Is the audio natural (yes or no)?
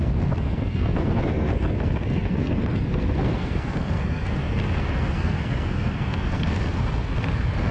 no